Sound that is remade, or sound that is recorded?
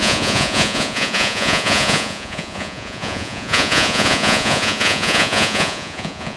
remade